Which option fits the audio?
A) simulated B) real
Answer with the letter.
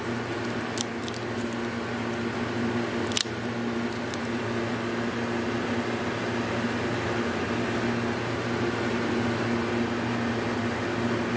B